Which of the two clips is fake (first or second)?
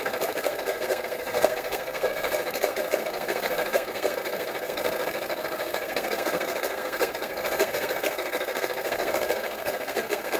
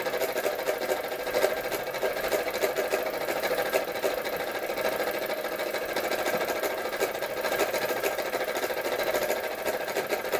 first